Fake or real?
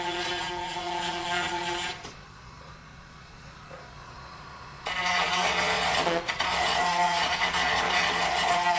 fake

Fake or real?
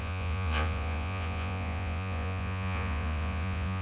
fake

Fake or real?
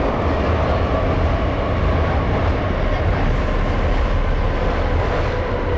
real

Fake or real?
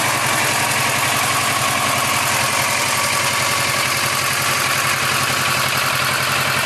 real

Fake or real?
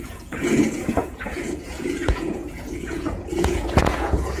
fake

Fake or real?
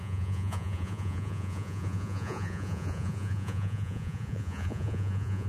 fake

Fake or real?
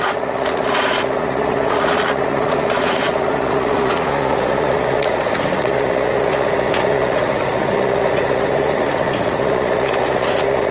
fake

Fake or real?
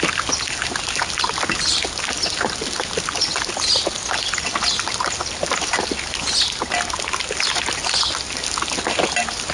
real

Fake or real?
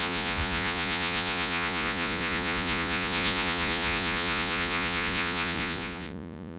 fake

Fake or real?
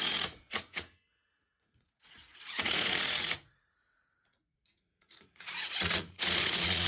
fake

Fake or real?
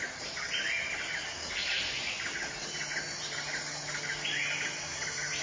real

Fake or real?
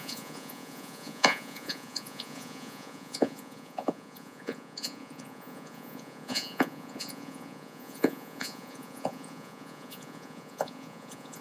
fake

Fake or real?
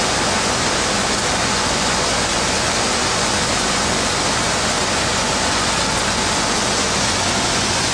fake